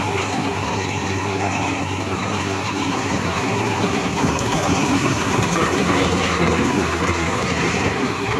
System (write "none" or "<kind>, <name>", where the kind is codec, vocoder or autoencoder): codec, SNAC